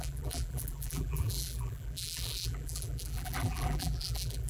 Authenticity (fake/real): fake